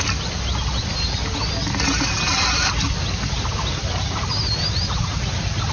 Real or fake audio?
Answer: real